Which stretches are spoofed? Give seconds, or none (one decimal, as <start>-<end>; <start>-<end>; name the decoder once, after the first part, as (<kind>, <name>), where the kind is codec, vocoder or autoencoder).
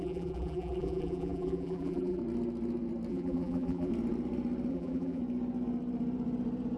0.0-2.2 (vocoder, BigVGAN v2); 3.1-3.9; 4.7-5.2